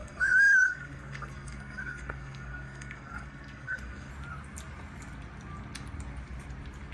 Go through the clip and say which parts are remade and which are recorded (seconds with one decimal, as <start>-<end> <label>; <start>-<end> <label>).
0.0-4.1 remade; 4.1-6.9 recorded